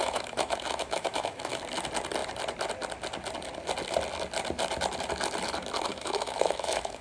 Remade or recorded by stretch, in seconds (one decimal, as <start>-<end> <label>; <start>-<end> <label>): 0.0-1.6 remade; 1.6-5.9 recorded; 5.9-7.0 remade